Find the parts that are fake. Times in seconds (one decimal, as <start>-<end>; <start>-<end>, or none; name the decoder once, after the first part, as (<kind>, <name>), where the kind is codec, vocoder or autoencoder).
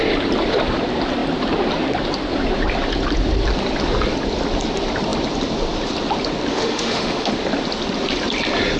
6.5-7.3 (autoencoder, DAC-VAE)